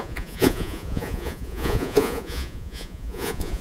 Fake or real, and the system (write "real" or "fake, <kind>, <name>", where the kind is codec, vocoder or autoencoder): fake, vocoder, Vocos